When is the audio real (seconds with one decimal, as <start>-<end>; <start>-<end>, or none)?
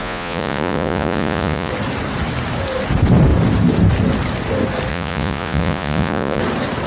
1.7-4.9; 6.4-6.9